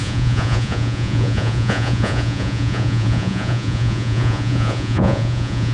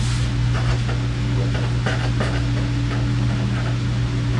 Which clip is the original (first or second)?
second